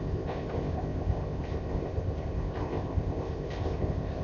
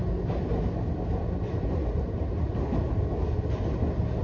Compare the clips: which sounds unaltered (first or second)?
second